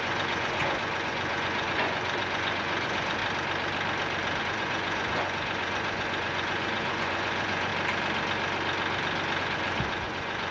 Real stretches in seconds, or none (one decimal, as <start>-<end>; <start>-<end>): 3.2-4.4; 7.7-9.4